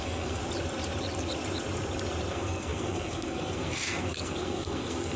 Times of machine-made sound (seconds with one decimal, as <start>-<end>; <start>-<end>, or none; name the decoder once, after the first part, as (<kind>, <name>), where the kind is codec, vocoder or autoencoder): 0.0-0.4 (codec, SNAC); 2.3-5.2